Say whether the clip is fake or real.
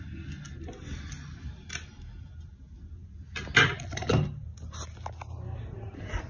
real